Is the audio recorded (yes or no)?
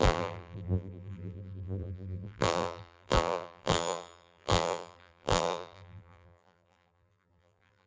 no